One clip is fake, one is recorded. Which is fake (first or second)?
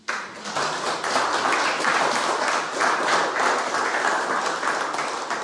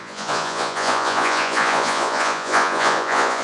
second